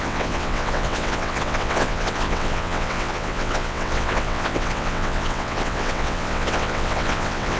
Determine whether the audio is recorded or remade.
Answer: remade